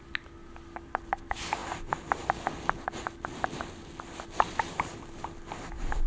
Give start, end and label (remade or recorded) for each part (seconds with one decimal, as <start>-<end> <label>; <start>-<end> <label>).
0.0-6.1 recorded